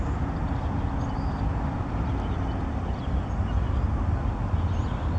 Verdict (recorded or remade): recorded